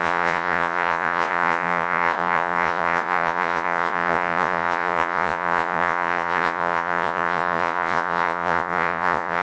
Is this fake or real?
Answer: fake